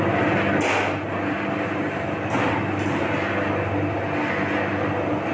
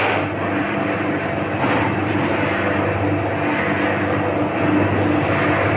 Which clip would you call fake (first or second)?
second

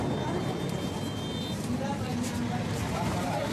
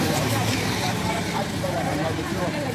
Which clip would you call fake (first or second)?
second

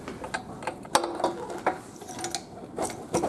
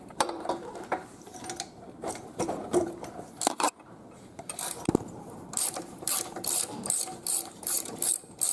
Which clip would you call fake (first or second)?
second